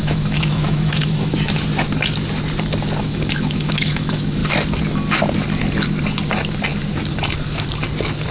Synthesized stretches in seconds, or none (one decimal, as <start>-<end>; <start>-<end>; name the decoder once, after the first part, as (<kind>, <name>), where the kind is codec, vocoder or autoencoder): 0.0-1.3 (autoencoder, DAC-VAE); 3.0-4.4